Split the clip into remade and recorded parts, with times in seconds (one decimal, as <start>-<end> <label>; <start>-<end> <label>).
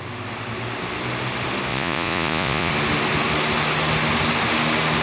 0.0-1.7 recorded; 1.7-2.7 remade; 2.7-5.0 recorded